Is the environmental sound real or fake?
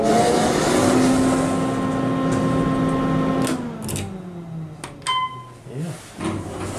real